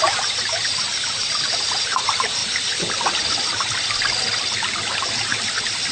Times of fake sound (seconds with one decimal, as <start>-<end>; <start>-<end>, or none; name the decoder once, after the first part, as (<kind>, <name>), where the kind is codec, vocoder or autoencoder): 0.0-2.4 (vocoder, BigVGAN v2)